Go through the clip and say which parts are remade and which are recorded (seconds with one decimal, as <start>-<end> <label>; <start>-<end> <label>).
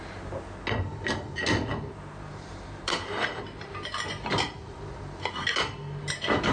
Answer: 0.0-1.7 recorded; 1.7-5.4 remade; 5.4-6.5 recorded